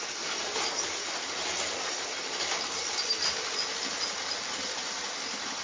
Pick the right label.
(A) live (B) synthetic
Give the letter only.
A